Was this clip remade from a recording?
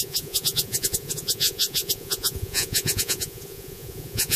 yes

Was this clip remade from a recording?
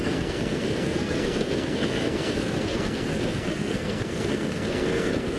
yes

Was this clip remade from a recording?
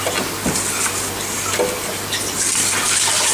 no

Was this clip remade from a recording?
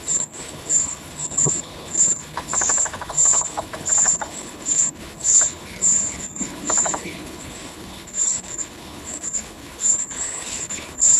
yes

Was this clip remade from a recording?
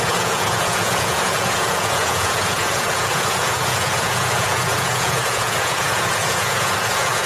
yes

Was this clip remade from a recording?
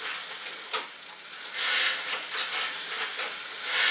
no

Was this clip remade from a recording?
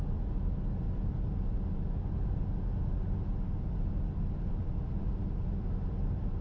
no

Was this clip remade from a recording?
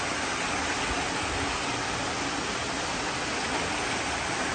no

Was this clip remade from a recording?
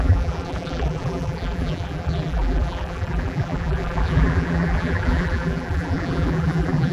yes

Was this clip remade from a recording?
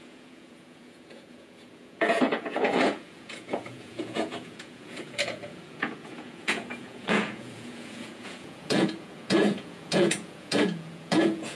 yes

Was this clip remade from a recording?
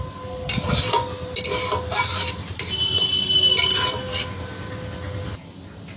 no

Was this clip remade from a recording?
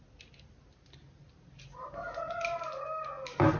no